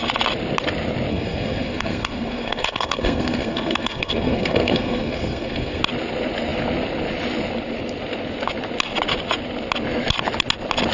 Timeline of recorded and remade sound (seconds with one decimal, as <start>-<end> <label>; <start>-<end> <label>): 0.0-1.1 recorded; 1.1-5.8 remade; 5.8-10.9 recorded